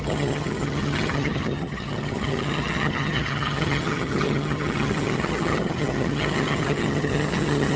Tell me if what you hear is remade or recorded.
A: remade